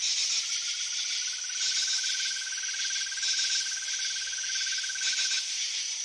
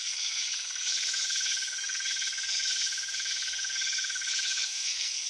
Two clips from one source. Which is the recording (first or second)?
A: first